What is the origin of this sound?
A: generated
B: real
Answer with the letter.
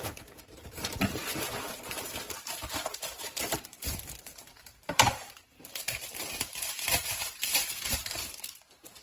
A